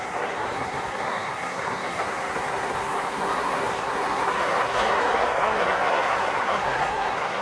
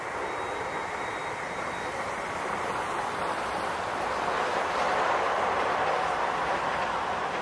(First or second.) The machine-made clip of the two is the first